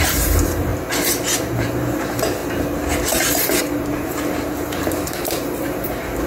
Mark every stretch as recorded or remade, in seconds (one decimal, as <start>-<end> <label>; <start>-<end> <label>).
0.0-0.7 remade; 0.7-1.4 recorded; 1.4-2.4 remade; 2.4-3.6 recorded; 3.6-6.3 remade